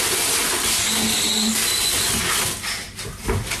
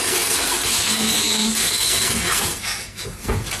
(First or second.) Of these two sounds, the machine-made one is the second